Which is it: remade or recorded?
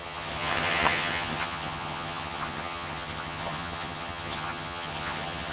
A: remade